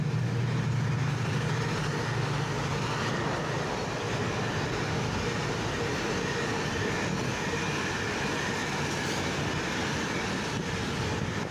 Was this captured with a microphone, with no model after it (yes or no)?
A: yes